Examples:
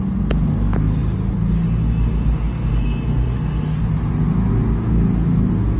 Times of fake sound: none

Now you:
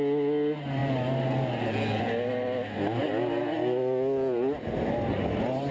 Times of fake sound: none

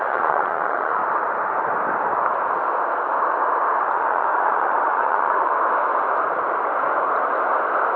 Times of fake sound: 0.0-1.0 (vocoder, Vocos); 3.9-5.5